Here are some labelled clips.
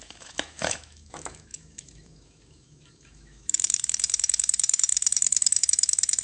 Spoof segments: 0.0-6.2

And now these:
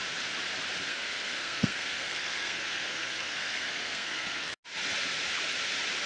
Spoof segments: 0.9-4.6

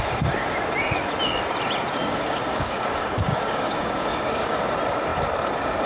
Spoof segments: 2.0-4.6

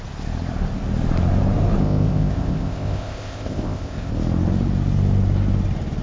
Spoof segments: 1.8-4.1

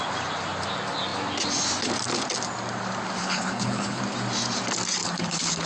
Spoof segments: 3.2-4.0; 5.0-5.7

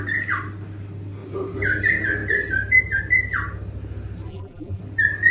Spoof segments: 4.3-4.8

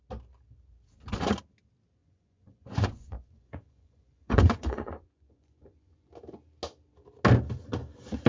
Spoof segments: 2.0-6.1